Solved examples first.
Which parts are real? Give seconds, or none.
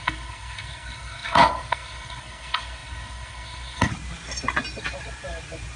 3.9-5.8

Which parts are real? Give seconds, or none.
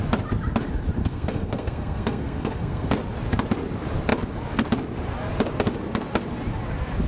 0.0-1.0; 2.9-7.1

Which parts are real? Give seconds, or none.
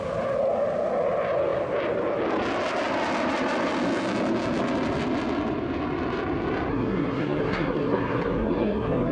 0.0-6.7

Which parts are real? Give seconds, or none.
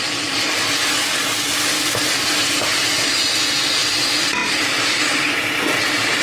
0.0-6.2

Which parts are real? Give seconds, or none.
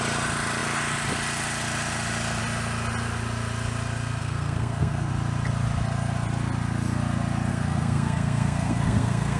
0.0-4.2; 5.1-7.5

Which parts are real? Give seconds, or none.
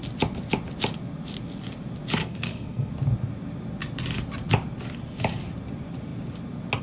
0.0-2.2; 2.9-6.8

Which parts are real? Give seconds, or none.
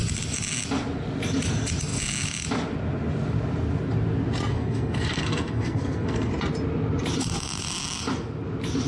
0.0-4.5; 6.3-8.9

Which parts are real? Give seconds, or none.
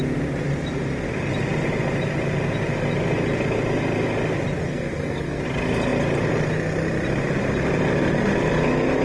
0.0-4.6; 5.4-9.0